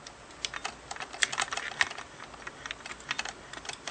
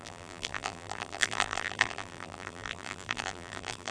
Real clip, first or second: first